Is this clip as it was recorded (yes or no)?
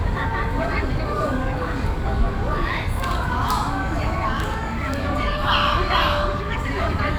no